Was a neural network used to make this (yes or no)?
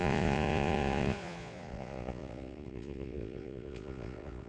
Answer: yes